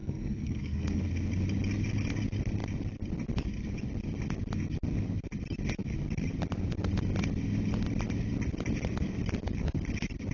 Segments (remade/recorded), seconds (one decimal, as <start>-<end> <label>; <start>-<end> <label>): 0.0-1.0 remade; 1.0-10.3 recorded

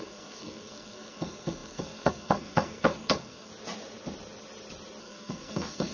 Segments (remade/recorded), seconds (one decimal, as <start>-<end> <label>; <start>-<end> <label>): 0.0-3.5 remade; 3.5-5.0 recorded; 5.0-5.9 remade

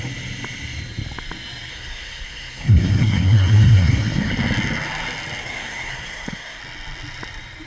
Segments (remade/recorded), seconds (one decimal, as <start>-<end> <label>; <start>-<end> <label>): 0.0-1.7 recorded; 1.7-4.3 remade; 4.3-5.4 recorded; 5.4-6.6 remade; 6.6-7.7 recorded